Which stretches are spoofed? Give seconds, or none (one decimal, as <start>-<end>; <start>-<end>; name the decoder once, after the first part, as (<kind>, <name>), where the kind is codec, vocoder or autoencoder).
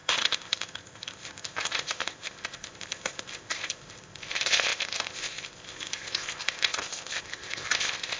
0.0-8.2 (codec, ZipCodec)